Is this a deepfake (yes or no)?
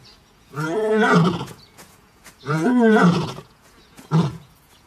yes